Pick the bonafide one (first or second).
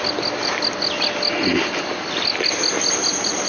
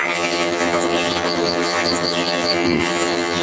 first